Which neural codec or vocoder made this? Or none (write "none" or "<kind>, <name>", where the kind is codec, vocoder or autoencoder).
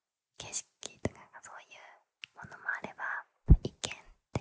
none